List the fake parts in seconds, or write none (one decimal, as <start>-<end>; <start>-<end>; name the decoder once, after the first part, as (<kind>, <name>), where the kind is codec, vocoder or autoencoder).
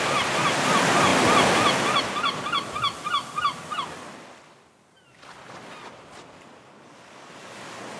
none